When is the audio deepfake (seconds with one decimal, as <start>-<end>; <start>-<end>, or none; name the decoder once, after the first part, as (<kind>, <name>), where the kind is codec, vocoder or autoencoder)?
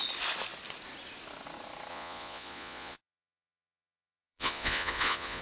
1.9-5.4 (vocoder, Vocos)